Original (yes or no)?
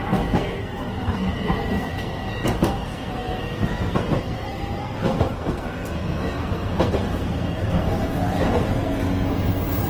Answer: no